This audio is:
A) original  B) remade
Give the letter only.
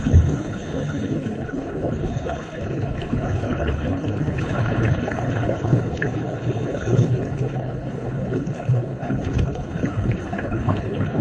B